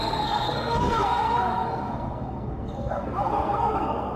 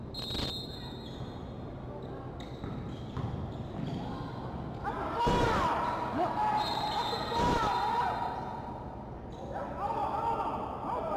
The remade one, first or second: first